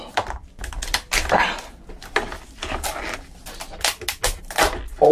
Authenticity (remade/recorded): recorded